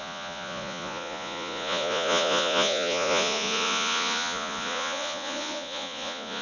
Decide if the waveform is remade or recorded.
remade